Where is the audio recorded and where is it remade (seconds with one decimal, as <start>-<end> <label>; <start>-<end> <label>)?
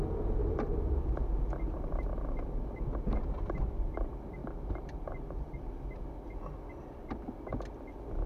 0.0-0.4 recorded; 0.4-2.1 remade; 2.1-4.4 recorded; 4.4-5.7 remade; 5.7-8.3 recorded